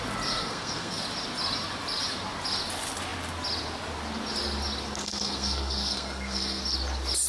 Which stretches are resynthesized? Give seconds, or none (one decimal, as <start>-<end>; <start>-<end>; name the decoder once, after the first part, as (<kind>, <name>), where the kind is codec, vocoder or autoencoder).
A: 0.4-1.0 (codec, SNAC); 5.0-6.6